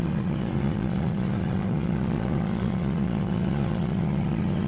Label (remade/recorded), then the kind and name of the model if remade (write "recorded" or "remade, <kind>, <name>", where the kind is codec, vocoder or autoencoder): remade, vocoder, Vocos